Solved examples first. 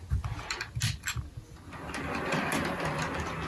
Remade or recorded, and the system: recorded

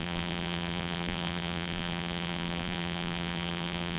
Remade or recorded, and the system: remade, vocoder, BigVGAN v2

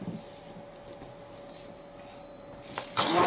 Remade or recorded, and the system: recorded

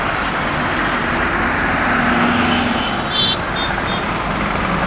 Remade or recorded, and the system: recorded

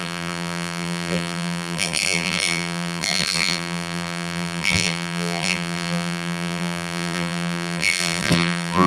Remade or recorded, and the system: remade, vocoder, BigVGAN v2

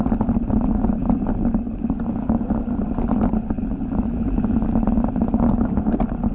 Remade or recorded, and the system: recorded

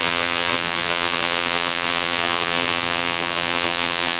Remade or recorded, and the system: remade, vocoder, BigVGAN v2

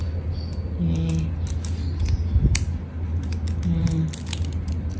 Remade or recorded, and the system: recorded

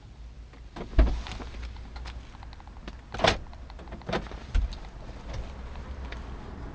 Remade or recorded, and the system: recorded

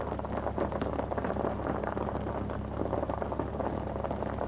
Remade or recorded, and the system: recorded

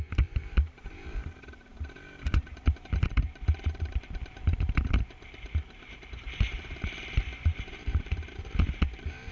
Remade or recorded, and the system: remade, vocoder, BigVGAN v2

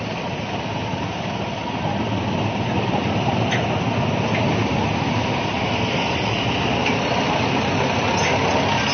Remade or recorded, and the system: recorded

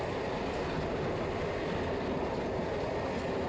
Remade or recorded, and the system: recorded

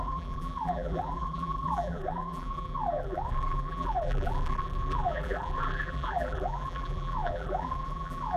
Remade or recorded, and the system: remade, vocoder, BigVGAN v2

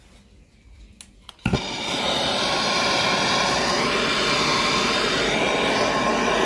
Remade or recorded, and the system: recorded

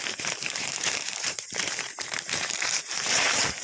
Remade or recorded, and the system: remade, vocoder, BigVGAN v2